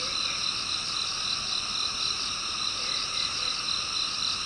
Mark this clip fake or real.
real